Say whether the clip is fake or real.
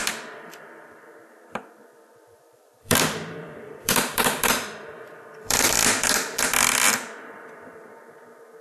fake